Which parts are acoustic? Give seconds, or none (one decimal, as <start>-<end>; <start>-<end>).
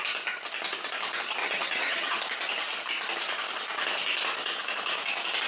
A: 0.0-1.4; 2.2-5.5